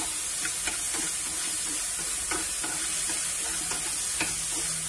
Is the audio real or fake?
real